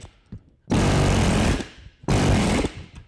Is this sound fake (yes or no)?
no